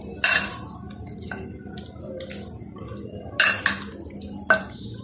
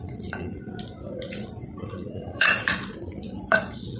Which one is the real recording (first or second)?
first